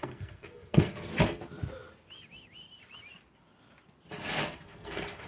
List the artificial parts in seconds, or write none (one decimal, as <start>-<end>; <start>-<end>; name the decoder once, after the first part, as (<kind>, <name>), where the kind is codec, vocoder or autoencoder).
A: 0.0-1.1 (codec, SNAC); 4.3-5.3